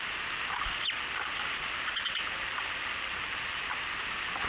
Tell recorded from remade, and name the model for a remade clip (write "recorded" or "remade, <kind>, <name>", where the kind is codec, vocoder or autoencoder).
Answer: recorded